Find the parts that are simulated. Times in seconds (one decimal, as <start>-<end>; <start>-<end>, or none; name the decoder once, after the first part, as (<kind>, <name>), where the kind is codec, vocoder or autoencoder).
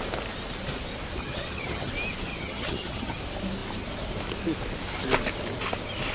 1.2-1.9 (vocoder, HiFi-GAN); 2.3-3.2